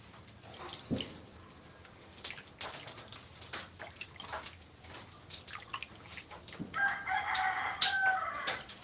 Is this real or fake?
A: real